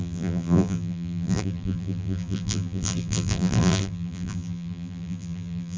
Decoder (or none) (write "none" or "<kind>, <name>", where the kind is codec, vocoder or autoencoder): vocoder, BigVGAN v2